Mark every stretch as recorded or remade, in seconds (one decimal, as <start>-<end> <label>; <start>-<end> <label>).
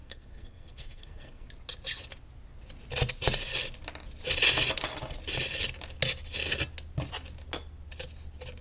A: 0.0-1.5 remade; 1.5-8.6 recorded